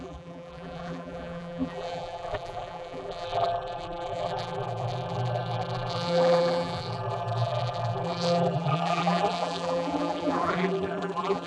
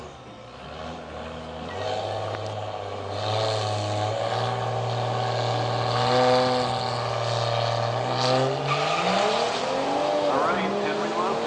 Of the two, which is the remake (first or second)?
first